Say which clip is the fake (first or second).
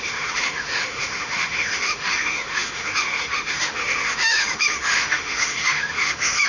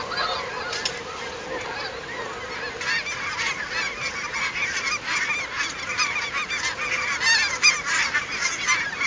first